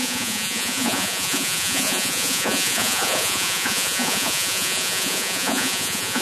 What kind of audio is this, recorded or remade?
remade